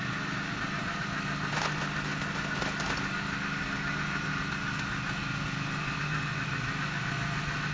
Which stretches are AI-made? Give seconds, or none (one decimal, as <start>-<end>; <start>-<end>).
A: none